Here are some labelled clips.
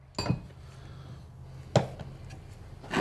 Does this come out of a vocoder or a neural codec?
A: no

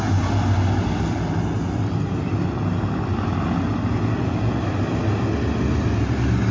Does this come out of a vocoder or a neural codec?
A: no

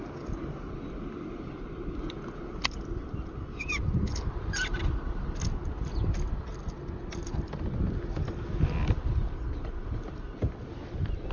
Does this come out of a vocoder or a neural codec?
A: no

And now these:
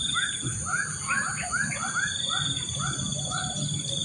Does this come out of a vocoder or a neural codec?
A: no